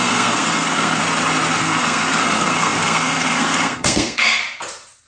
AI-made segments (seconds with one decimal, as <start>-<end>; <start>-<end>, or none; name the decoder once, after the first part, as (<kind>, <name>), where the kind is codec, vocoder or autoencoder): 0.0-1.0 (codec, SNAC); 1.6-4.4